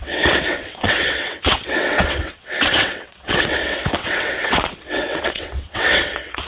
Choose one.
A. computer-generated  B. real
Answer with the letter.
A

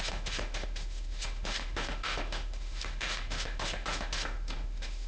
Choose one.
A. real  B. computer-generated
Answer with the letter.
B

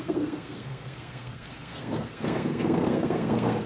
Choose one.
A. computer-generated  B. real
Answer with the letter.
A